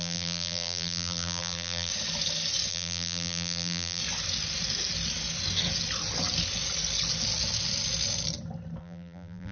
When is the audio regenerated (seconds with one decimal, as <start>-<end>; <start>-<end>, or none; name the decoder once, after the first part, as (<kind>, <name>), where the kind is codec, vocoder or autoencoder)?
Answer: 0.0-1.9 (vocoder, BigVGAN v2); 2.7-4.0; 8.8-9.5